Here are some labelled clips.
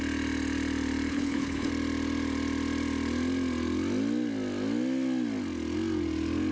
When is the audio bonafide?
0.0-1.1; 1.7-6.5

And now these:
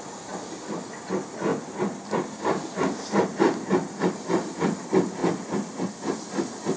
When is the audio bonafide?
0.0-1.5; 3.4-5.2; 5.9-6.8

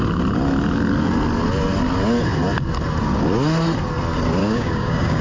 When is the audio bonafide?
0.0-4.4

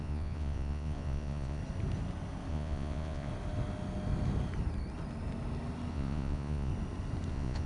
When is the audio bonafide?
1.6-2.5; 3.3-5.9; 6.7-7.3

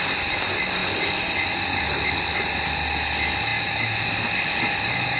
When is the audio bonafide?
0.8-3.1; 3.5-4.4

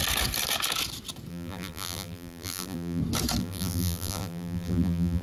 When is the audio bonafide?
0.0-1.3; 3.0-3.4

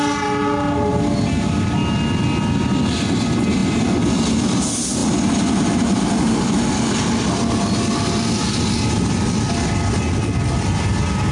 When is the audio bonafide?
0.0-11.3

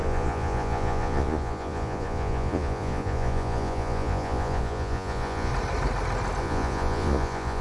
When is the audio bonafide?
5.5-6.4